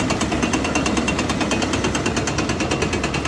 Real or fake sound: real